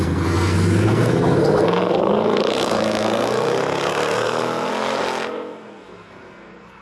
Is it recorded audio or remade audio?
remade